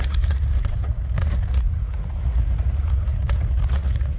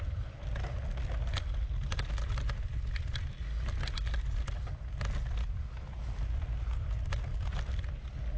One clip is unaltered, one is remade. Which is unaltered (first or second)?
second